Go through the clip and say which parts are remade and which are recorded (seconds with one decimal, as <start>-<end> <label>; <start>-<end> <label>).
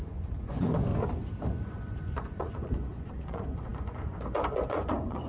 0.0-0.9 remade; 0.9-1.4 recorded; 1.4-5.3 remade